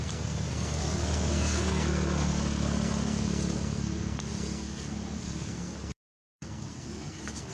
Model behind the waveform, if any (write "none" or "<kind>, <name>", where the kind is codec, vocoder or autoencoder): codec, SNAC